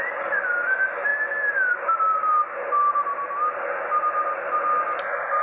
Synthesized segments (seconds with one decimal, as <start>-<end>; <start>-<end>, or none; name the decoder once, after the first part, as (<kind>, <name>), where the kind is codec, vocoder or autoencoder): none

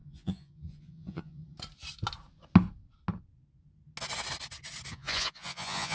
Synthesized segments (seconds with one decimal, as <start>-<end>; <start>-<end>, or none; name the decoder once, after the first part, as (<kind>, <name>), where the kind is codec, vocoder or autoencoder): 0.0-1.4 (vocoder, Vocos); 4.9-5.9

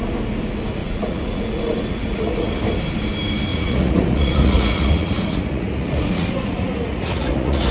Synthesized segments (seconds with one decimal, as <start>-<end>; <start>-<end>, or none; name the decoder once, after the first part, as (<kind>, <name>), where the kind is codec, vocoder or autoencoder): 0.8-2.6 (vocoder, Vocos); 3.5-7.7

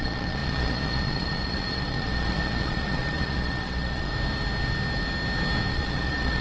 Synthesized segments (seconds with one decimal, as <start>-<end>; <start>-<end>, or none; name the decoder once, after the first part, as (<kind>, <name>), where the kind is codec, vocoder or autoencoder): 0.0-4.1 (vocoder, Vocos); 5.7-6.4